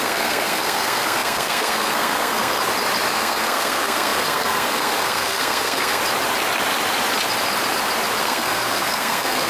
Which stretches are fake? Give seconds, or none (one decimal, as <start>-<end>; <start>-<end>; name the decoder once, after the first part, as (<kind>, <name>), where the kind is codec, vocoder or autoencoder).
0.0-2.6 (codec, SNAC); 3.1-6.0; 8.2-9.5

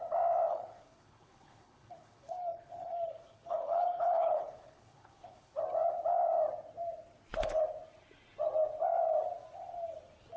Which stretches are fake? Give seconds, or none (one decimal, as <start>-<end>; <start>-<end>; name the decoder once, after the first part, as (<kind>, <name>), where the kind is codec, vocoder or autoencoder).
0.5-5.6 (codec, HILCodec)

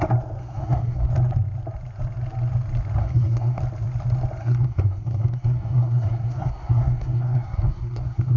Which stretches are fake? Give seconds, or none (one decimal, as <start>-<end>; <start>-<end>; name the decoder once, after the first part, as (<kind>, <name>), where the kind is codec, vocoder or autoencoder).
0.4-1.1 (codec, SNAC); 3.0-3.6; 4.4-8.4